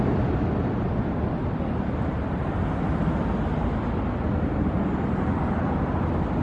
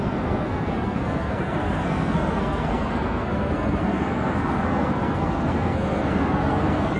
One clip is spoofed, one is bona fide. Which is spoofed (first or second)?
second